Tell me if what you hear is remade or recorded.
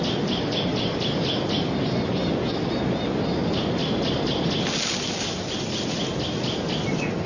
recorded